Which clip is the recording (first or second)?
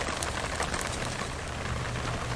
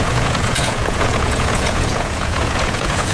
first